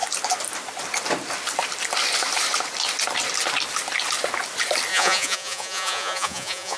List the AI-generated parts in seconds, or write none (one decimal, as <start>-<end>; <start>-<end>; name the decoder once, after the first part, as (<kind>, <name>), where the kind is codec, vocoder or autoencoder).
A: 4.9-6.8 (vocoder, Vocos)